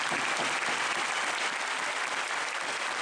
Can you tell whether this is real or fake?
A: real